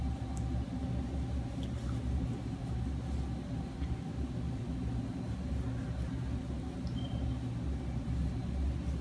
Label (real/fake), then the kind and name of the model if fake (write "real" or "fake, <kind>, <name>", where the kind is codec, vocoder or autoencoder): real